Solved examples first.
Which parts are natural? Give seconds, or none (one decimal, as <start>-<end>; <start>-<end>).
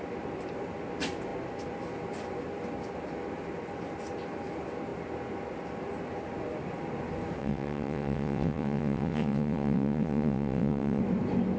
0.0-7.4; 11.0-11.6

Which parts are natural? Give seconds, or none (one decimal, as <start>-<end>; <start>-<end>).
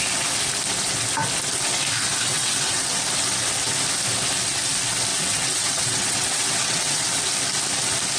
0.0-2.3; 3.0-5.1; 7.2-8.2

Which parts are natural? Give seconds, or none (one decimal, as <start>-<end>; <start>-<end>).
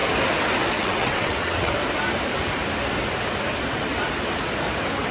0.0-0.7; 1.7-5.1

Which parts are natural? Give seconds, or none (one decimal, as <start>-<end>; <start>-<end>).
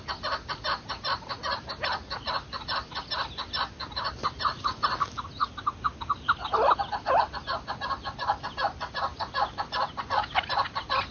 0.0-11.1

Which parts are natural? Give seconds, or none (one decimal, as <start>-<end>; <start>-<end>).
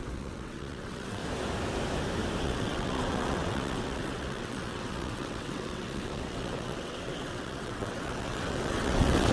1.2-2.4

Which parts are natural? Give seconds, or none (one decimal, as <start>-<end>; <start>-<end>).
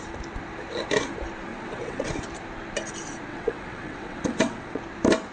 0.0-1.5; 2.1-3.3; 4.8-5.3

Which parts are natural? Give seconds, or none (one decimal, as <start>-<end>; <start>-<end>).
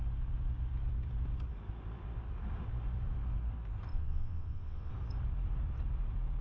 0.0-3.9; 4.9-6.4